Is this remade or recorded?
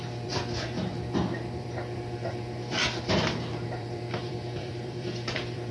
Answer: remade